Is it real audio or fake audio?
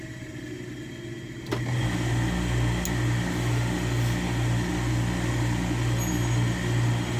real